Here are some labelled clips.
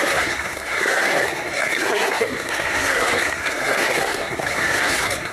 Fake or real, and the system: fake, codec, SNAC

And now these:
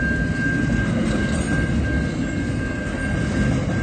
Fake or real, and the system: real